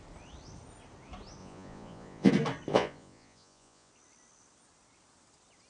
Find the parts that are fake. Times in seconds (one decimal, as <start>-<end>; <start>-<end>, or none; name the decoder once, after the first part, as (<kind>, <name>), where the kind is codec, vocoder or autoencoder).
1.4-2.3 (vocoder, Vocos); 2.7-3.9